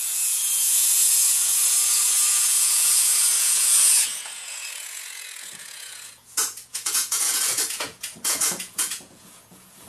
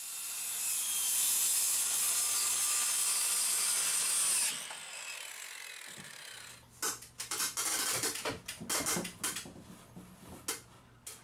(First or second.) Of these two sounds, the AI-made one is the first